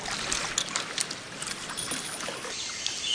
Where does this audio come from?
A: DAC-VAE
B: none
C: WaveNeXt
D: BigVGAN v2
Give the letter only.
B